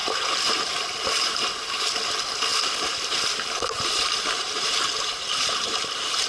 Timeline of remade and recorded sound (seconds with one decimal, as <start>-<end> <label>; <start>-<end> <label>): 0.0-1.9 remade; 1.9-2.5 recorded; 2.5-6.3 remade